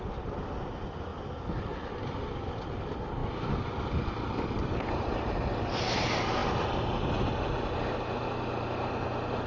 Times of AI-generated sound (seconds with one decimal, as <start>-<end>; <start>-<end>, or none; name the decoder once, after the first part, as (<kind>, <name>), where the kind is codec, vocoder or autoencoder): none